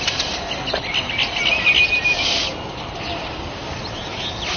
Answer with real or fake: real